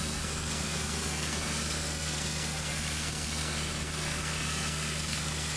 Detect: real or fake fake